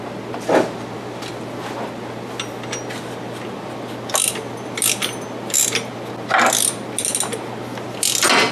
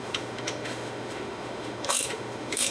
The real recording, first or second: first